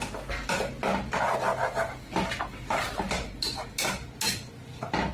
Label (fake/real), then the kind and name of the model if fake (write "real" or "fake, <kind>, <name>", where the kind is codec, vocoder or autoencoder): real